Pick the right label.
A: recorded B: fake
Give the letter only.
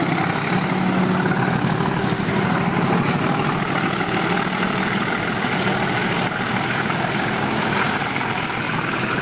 A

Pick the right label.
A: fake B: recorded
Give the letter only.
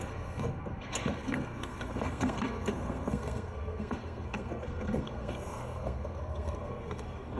A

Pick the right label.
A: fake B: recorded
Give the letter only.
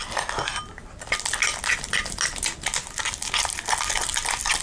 B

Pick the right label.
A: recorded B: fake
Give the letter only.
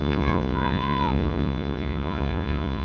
B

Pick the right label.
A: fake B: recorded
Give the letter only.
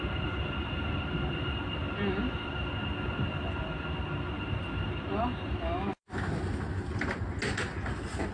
B